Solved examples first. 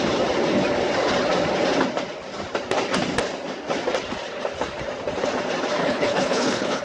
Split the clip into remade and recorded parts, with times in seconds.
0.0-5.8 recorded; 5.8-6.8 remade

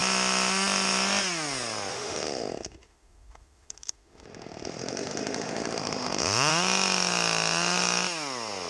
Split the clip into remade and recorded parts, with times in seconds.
0.0-1.9 recorded; 1.9-6.5 remade; 6.5-8.7 recorded